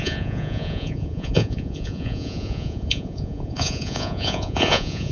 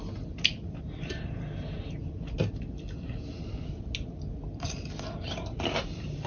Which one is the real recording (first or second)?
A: second